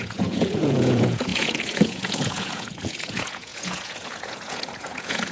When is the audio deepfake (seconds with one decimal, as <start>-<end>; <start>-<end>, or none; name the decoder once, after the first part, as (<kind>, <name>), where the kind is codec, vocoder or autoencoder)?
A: 0.0-5.3 (vocoder, Vocos)